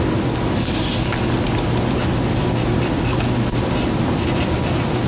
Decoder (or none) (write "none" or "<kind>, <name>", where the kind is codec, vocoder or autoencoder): none